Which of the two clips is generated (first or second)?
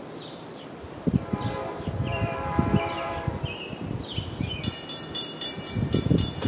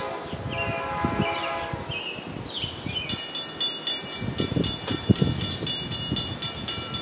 first